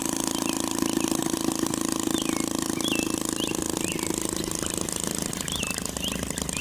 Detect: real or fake real